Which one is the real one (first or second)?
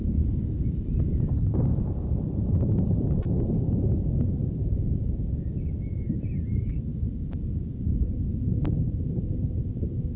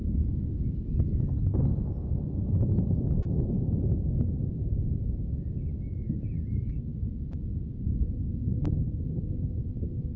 second